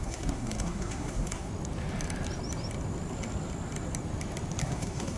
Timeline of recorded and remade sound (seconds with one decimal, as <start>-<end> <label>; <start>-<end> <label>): 0.0-1.5 remade; 1.5-4.6 recorded; 4.6-5.2 remade